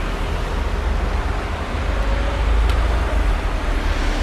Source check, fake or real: real